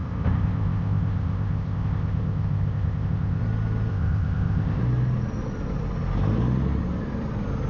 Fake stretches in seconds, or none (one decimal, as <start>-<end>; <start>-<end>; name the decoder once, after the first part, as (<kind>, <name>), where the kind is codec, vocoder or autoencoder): 0.0-3.4 (codec, ZipCodec); 3.9-4.8